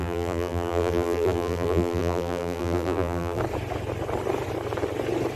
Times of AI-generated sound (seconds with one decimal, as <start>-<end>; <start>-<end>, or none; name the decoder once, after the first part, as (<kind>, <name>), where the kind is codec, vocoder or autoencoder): 0.0-3.4 (vocoder, BigVGAN v2)